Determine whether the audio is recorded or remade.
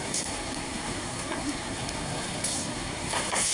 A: remade